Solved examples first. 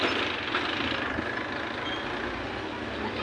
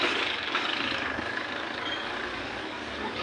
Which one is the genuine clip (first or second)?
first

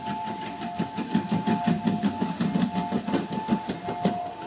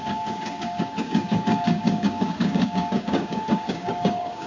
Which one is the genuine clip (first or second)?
first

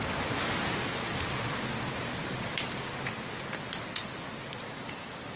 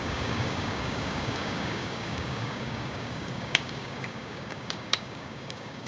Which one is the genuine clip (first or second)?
first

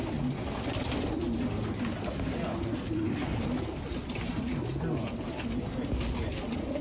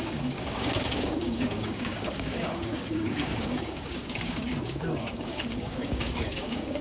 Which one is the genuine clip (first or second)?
first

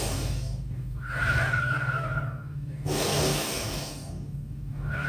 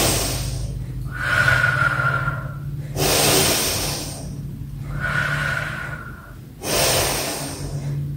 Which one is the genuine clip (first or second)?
second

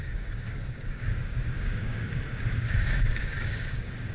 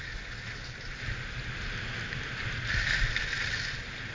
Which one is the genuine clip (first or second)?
second